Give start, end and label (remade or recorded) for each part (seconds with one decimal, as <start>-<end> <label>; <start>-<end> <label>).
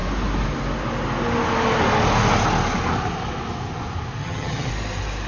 0.0-4.2 recorded; 4.2-4.7 remade; 4.7-5.3 recorded